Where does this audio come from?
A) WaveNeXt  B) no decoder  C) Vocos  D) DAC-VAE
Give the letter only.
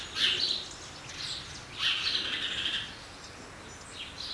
B